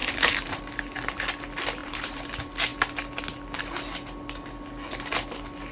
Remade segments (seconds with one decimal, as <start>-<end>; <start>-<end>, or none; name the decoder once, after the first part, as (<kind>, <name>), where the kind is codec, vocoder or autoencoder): 0.0-0.6 (vocoder, BigVGAN v2); 1.8-2.3